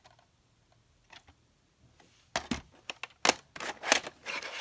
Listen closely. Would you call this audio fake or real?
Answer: real